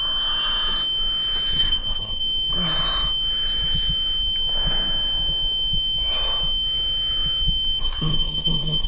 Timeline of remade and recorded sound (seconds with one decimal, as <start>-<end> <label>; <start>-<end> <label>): 0.0-1.6 recorded; 1.6-2.2 remade; 2.2-7.8 recorded; 7.8-8.9 remade